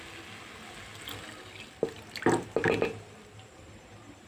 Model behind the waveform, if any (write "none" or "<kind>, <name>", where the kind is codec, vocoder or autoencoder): none